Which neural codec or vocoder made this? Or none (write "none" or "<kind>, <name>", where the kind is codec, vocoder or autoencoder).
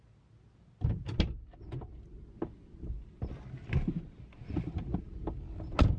none